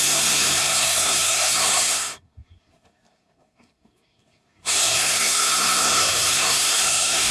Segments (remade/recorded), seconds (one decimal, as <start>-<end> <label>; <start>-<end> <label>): 0.0-7.3 remade

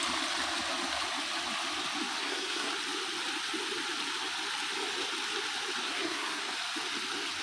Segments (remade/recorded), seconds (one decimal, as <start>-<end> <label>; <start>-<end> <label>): 0.0-2.2 recorded; 2.2-2.7 remade; 2.7-5.8 recorded; 5.8-6.5 remade; 6.5-7.4 recorded